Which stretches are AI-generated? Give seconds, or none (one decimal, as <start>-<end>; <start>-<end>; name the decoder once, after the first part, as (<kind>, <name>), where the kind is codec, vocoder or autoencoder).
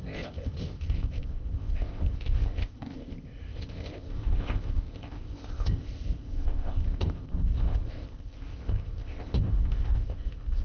0.0-10.6 (codec, ZipCodec)